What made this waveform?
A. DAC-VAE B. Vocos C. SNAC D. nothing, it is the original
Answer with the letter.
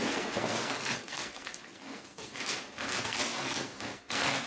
C